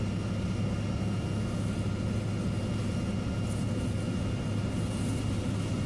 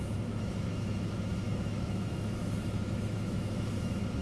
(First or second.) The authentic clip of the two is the first